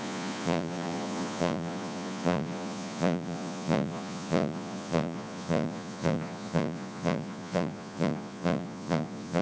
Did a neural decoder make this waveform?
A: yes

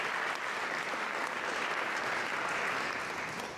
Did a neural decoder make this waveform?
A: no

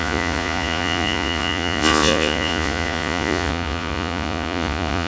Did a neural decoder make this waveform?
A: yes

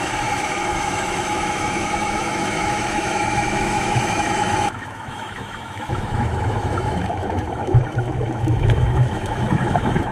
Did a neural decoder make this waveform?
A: yes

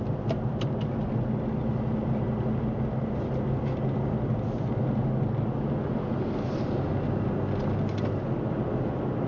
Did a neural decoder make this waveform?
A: no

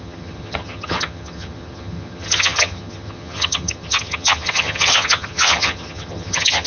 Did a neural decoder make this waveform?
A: yes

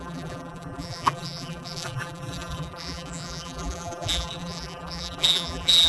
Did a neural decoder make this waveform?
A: yes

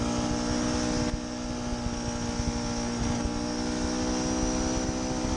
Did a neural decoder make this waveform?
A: no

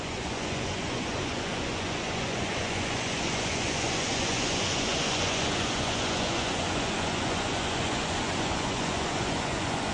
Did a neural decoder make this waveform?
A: yes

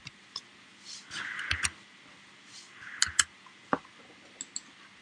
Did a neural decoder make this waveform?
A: no